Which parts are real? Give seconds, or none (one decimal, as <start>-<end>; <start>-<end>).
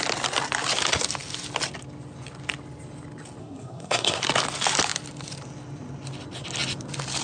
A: 0.0-3.4; 4.2-7.2